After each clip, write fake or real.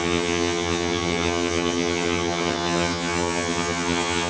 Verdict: fake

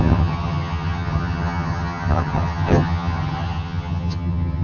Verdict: fake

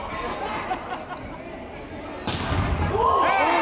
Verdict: real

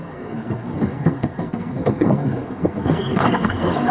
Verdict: fake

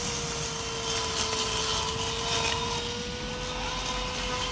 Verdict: real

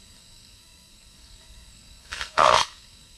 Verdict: fake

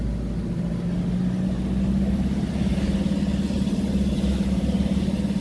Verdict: real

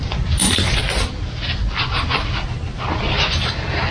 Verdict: real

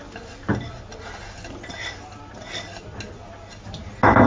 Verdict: real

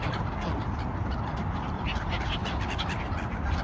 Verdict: real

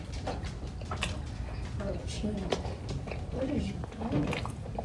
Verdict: real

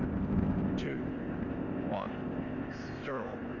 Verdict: fake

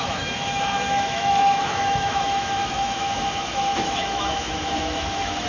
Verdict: fake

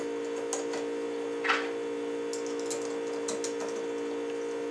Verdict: real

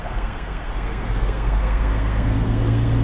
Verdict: fake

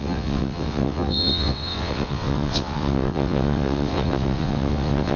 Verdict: fake